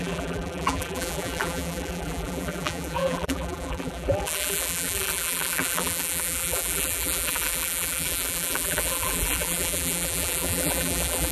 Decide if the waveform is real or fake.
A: fake